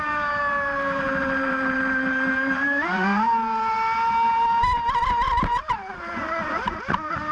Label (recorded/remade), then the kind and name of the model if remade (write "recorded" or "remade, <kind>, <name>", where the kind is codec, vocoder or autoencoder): remade, vocoder, BigVGAN v2